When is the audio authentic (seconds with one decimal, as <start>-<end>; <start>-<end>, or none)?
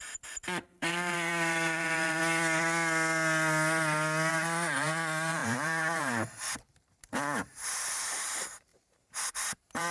2.2-4.3